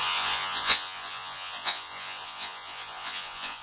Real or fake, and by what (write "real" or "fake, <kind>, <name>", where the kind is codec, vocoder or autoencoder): fake, vocoder, Vocos